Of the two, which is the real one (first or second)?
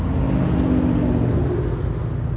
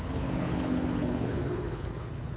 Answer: first